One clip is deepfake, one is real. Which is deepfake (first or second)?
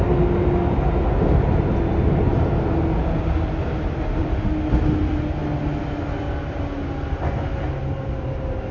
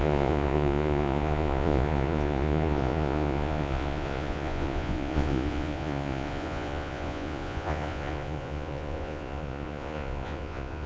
second